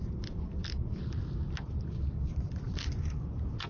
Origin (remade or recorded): recorded